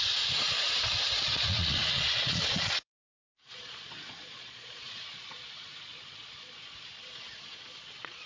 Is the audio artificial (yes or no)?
yes